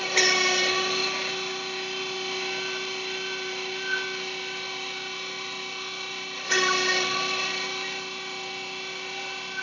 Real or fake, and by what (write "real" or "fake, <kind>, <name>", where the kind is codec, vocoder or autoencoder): real